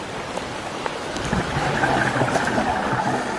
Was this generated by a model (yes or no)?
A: no